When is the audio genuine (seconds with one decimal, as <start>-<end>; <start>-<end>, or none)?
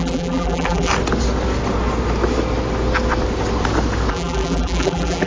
0.9-4.1